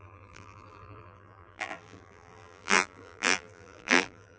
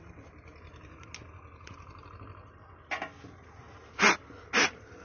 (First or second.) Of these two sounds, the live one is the second